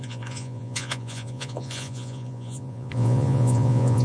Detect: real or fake fake